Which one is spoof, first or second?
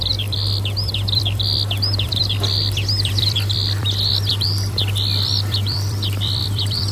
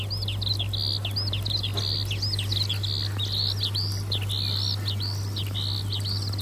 first